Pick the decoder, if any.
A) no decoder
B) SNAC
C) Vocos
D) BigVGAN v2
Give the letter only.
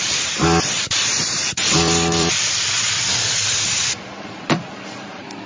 D